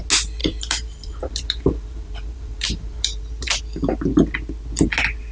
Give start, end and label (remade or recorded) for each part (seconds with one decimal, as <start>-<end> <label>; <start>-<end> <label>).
0.0-0.4 recorded; 0.4-3.6 remade; 3.6-5.3 recorded